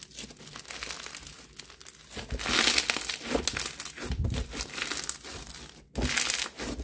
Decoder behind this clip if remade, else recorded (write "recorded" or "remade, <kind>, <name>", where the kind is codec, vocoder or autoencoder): recorded